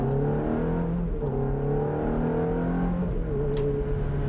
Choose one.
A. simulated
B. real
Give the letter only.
B